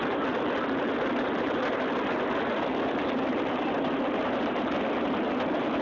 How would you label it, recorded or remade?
recorded